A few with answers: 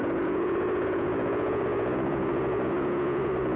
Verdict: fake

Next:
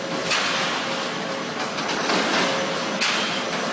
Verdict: real